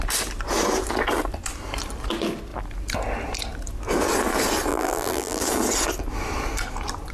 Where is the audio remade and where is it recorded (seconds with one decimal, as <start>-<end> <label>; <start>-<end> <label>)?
0.0-4.7 recorded; 4.7-5.4 remade; 5.4-7.1 recorded